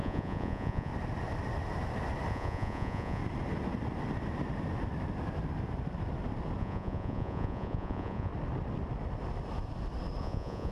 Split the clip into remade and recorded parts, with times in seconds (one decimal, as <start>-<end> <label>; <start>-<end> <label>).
0.0-0.9 remade; 0.9-2.3 recorded; 2.3-3.2 remade; 3.2-6.6 recorded; 6.6-8.3 remade; 8.3-10.2 recorded; 10.2-10.7 remade